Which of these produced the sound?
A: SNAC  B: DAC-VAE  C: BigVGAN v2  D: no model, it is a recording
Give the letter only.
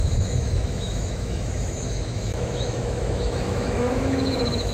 B